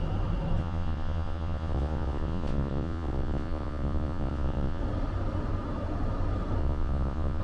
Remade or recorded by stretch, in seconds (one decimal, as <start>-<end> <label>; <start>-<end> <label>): 0.0-0.6 recorded; 0.6-4.8 remade; 4.8-6.6 recorded; 6.6-7.4 remade